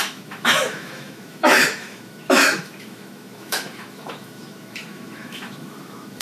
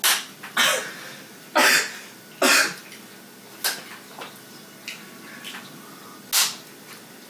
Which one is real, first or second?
second